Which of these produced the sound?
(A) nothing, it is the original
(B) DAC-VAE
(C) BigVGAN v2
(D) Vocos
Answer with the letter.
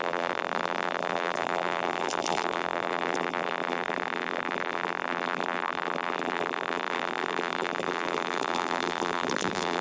C